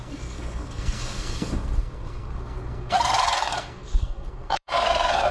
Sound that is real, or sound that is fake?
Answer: fake